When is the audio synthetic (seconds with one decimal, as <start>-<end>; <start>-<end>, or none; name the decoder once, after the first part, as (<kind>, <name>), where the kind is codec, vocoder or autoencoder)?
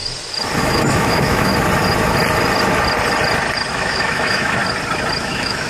0.6-1.5 (autoencoder, DAC-VAE); 3.7-4.6; 5.2-5.7